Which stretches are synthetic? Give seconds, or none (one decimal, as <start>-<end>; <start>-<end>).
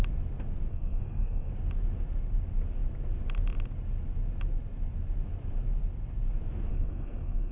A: 0.7-1.5; 6.7-7.5